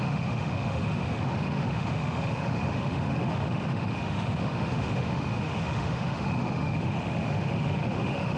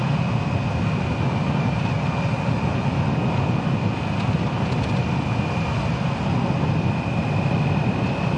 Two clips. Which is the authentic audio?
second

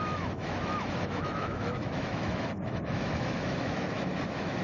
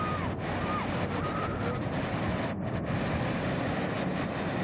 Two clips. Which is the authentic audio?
second